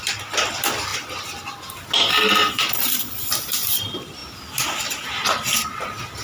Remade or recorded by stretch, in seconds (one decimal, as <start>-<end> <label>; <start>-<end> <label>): 0.0-2.4 recorded; 2.4-3.3 remade; 3.3-6.2 recorded